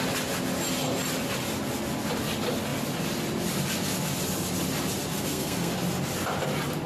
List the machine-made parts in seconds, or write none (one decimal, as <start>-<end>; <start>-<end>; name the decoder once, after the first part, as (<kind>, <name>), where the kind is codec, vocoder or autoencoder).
5.1-5.7 (codec, SNAC)

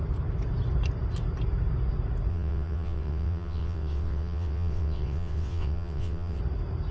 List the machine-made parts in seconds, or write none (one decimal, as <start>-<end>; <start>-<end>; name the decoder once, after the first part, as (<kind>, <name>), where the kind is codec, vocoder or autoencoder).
2.3-6.4 (vocoder, WaveNeXt)

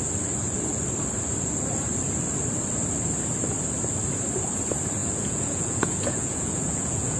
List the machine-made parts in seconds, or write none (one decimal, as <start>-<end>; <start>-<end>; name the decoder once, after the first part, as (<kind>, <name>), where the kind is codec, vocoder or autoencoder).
5.0-7.2 (vocoder, Vocos)

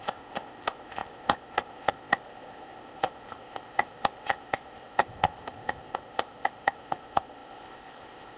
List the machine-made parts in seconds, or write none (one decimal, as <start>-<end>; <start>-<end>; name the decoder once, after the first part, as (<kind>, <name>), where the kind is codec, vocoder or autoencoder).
0.0-8.4 (codec, ZipCodec)

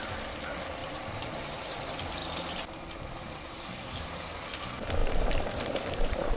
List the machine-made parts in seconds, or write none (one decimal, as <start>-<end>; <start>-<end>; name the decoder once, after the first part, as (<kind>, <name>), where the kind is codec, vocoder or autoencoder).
0.8-1.7 (vocoder, BigVGAN v2); 2.2-3.6; 5.0-6.4

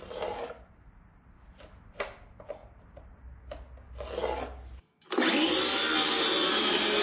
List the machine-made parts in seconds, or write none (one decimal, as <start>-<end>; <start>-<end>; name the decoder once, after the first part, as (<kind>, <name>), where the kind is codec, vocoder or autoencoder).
none

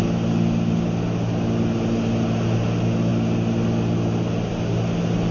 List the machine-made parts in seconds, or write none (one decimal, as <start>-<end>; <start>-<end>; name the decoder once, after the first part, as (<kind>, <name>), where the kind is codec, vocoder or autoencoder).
none

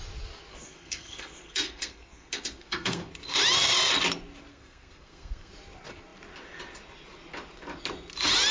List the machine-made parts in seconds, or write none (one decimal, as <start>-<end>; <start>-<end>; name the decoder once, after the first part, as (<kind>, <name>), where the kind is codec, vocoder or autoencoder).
0.5-3.1 (codec, SNAC); 4.5-5.5